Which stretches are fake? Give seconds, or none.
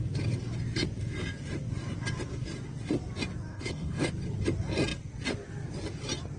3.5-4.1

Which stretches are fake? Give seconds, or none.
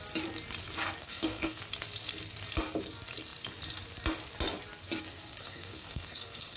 1.0-1.6; 5.1-6.6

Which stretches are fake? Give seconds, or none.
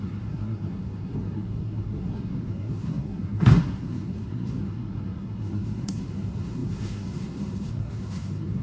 0.0-8.6